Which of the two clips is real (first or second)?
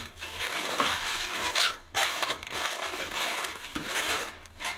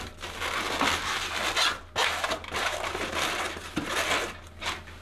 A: second